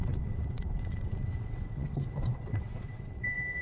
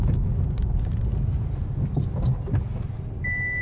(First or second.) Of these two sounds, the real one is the second